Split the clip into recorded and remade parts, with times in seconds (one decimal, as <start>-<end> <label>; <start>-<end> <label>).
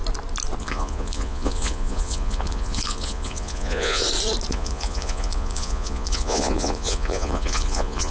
0.0-0.6 recorded; 0.6-4.0 remade; 4.0-4.5 recorded; 4.5-8.1 remade